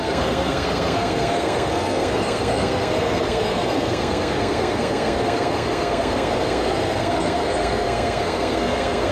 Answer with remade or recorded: remade